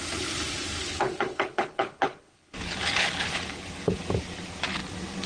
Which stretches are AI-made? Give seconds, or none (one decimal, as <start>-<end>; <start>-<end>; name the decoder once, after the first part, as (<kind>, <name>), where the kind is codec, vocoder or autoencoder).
0.8-4.0 (codec, HILCodec)

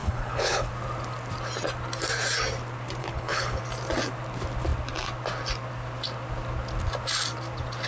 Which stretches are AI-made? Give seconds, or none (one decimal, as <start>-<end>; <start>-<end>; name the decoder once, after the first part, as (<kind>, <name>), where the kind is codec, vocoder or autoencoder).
0.0-0.7 (codec, HILCodec); 3.0-3.6

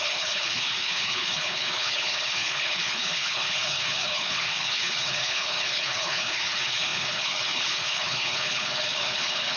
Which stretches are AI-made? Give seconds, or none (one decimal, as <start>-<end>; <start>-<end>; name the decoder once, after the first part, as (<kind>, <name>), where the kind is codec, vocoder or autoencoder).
0.0-9.6 (codec, HILCodec)

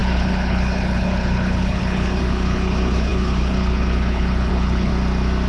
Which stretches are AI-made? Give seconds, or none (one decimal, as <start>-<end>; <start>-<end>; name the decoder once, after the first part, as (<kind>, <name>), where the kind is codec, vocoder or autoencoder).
0.0-4.9 (codec, HILCodec)

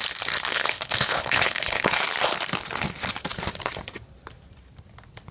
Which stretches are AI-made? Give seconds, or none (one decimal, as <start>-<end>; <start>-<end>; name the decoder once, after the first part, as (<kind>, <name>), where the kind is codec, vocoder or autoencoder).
0.5-2.0 (codec, HILCodec)

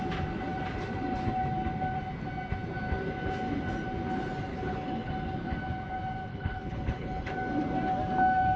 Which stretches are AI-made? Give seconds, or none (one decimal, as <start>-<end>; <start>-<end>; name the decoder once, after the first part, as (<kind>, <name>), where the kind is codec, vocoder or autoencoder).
4.5-5.1 (codec, HILCodec); 6.3-7.3

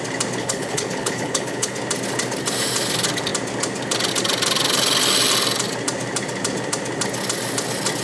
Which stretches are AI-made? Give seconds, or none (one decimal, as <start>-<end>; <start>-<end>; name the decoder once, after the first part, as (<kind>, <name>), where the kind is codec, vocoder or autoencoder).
0.4-1.8 (codec, HILCodec)